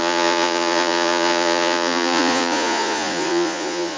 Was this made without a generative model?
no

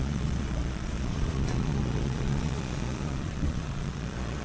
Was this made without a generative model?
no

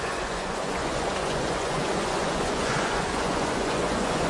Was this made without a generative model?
no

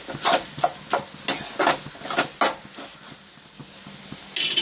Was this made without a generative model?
yes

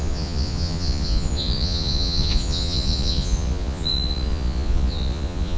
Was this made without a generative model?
no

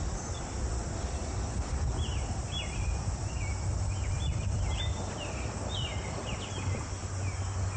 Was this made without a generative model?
yes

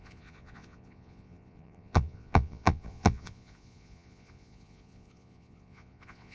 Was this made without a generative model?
no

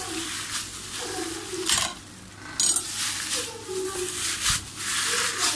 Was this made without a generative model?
yes